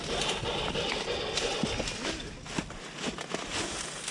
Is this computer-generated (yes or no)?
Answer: no